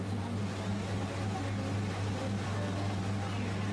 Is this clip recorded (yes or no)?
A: yes